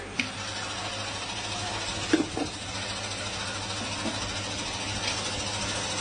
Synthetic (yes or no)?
no